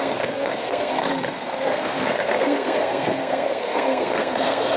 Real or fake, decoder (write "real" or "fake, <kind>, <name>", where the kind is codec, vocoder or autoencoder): fake, codec, SNAC